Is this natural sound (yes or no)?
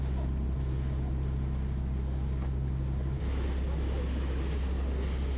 yes